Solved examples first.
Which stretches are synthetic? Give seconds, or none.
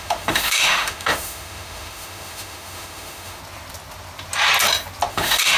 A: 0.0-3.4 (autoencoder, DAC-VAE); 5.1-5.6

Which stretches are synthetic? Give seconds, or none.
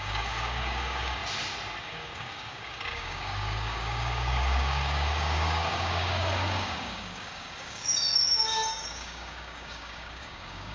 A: 0.0-1.2 (codec, DAC); 1.8-10.7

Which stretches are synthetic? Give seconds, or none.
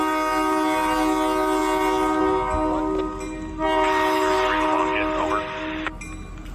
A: none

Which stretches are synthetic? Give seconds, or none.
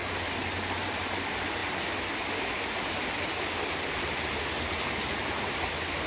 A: none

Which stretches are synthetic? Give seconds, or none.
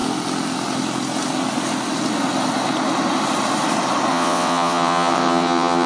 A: 4.1-5.9 (vocoder, WaveNeXt)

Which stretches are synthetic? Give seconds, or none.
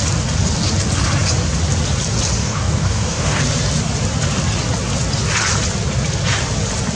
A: 2.4-3.4 (codec, DAC)